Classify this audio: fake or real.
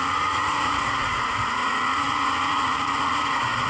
fake